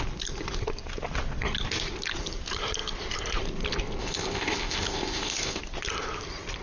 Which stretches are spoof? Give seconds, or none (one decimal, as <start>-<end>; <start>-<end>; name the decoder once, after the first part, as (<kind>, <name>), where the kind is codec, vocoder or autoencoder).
4.0-5.6 (codec, ZipCodec)